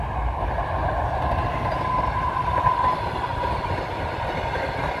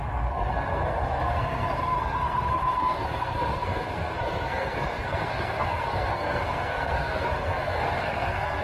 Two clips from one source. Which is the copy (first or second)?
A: second